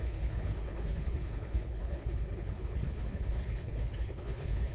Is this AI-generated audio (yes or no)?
yes